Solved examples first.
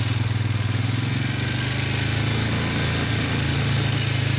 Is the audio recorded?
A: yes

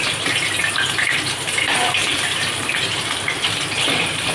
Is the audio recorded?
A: no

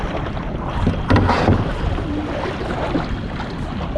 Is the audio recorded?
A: yes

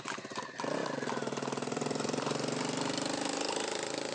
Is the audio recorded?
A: no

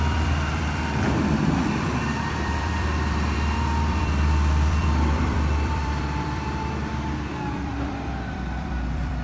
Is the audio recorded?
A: no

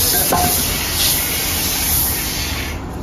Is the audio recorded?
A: yes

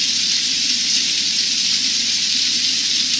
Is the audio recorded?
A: no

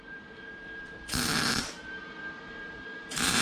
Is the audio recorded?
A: no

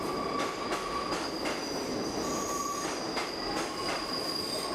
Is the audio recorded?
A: yes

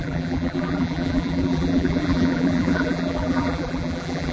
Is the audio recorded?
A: no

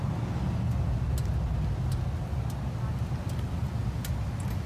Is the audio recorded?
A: yes